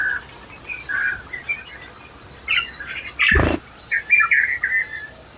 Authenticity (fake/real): real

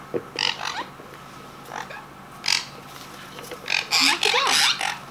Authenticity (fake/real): real